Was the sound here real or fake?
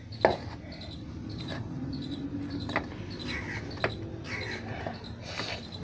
real